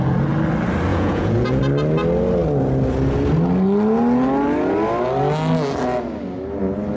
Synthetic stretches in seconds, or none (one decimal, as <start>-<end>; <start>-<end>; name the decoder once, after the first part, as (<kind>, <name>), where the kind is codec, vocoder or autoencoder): 0.9-1.6 (vocoder, Vocos)